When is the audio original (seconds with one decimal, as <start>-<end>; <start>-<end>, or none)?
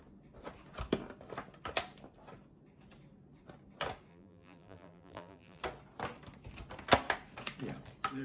0.0-4.1; 5.6-8.2